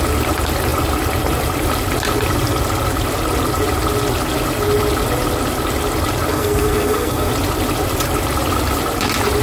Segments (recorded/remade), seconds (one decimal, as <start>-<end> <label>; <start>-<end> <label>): 0.0-6.3 recorded; 6.3-7.3 remade; 7.3-9.4 recorded